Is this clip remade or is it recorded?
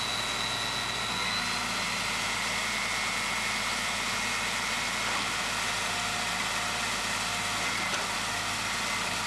recorded